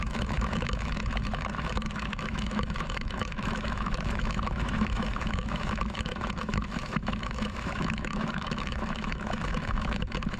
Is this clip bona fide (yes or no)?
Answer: no